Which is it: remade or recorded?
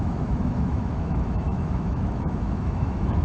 remade